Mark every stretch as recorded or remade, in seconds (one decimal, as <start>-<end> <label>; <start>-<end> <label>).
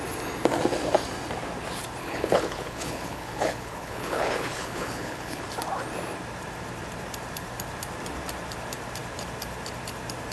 0.0-2.0 recorded; 2.0-5.4 remade; 5.4-10.3 recorded